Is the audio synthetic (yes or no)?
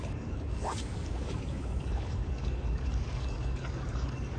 yes